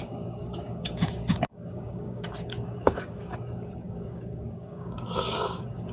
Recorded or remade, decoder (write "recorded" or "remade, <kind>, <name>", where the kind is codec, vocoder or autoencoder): remade, codec, DAC